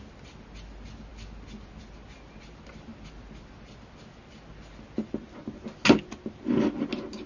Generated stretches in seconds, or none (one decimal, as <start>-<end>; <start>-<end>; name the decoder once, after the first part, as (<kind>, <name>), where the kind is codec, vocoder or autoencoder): none